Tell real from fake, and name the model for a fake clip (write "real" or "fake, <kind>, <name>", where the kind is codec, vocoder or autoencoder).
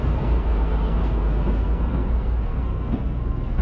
fake, codec, SNAC